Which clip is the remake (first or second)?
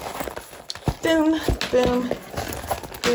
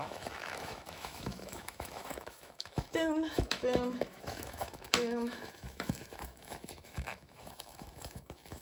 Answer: second